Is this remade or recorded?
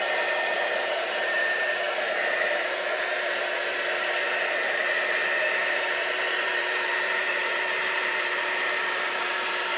remade